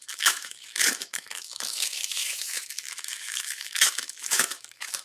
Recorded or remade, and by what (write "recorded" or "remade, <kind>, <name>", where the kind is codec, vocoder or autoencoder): remade, autoencoder, DAC-VAE